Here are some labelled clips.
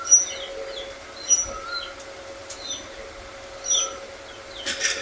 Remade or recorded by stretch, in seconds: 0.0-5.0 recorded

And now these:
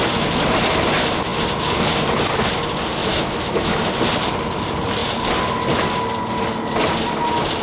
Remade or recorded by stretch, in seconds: 0.0-3.0 recorded; 3.0-3.8 remade; 3.8-7.6 recorded